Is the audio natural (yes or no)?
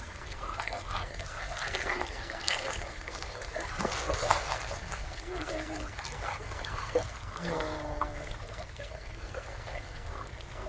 no